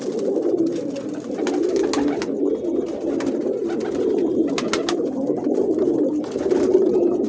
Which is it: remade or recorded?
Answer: recorded